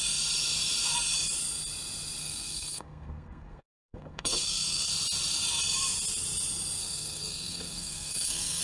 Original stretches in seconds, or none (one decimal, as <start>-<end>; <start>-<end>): 0.0-2.2; 4.9-6.8